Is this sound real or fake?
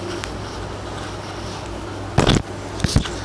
real